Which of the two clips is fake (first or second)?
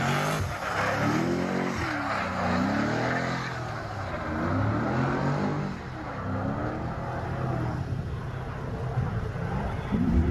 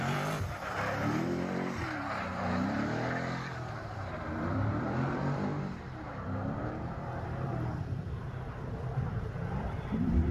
second